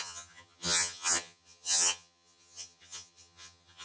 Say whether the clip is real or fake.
fake